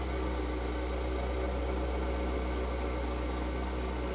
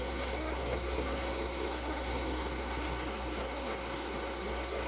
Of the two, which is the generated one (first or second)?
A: second